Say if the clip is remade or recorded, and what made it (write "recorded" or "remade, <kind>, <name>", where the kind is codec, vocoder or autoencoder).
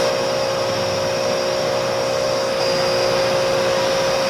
recorded